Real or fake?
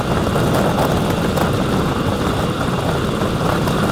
real